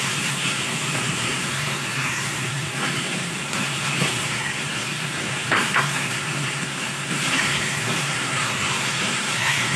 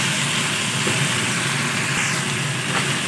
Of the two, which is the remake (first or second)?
first